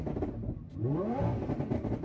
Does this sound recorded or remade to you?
remade